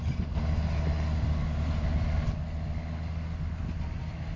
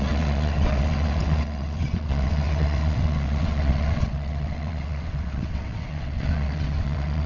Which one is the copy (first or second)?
second